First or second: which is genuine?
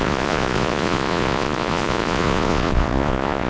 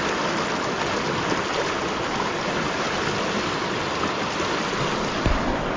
second